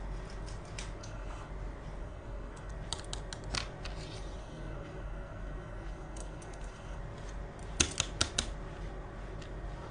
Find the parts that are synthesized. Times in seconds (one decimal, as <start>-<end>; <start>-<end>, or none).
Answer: 1.0-1.5; 2.0-2.7; 4.4-7.0